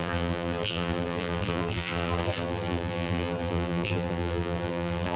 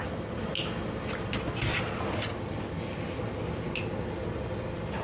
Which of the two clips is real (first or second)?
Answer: second